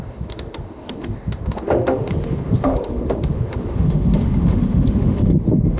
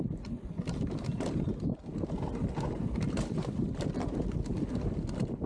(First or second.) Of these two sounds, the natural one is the second